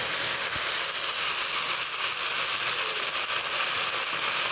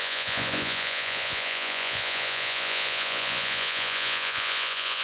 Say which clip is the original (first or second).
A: first